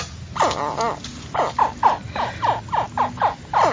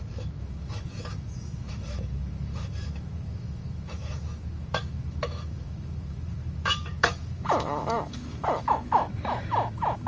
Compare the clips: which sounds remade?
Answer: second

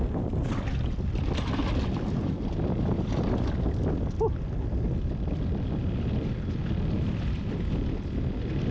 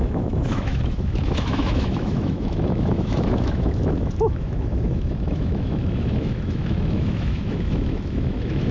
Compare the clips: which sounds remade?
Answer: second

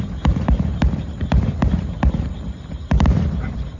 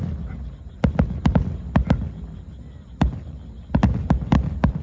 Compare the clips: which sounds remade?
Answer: first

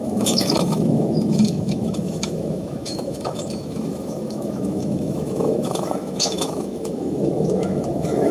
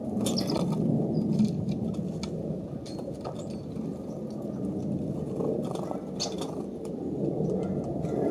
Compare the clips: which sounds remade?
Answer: first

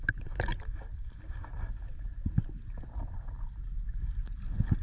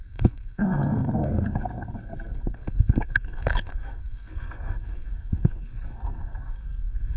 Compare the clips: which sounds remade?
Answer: second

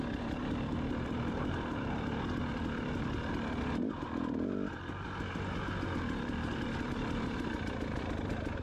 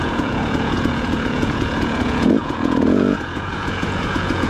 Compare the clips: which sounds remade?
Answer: second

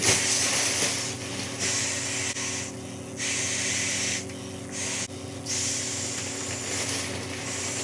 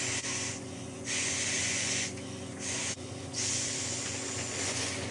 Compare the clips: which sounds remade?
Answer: second